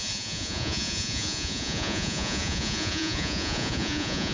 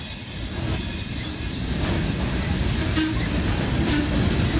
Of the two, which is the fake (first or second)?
first